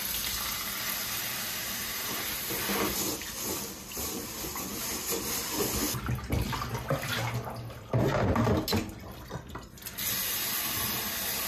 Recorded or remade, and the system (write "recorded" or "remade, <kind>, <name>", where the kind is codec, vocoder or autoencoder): recorded